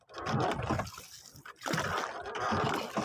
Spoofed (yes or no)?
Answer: no